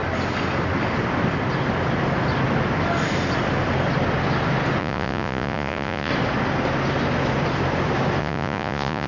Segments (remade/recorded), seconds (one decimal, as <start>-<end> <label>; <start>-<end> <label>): 0.0-4.8 recorded; 4.8-6.1 remade; 6.1-8.2 recorded; 8.2-9.1 remade